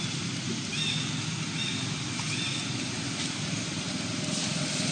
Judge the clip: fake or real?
real